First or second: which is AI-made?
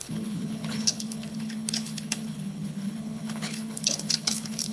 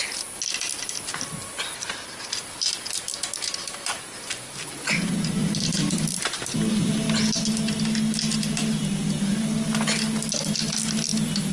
first